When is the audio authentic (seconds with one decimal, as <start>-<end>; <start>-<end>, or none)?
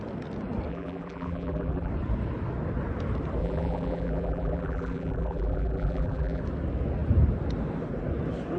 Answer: 0.0-0.7; 1.9-3.4; 6.4-8.6